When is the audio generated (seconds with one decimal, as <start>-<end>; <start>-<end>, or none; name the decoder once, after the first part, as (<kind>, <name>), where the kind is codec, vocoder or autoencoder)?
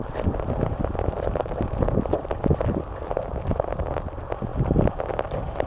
4.5-5.7 (vocoder, BigVGAN v2)